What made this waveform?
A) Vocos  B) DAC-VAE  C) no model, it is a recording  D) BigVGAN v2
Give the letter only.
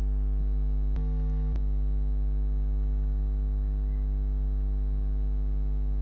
C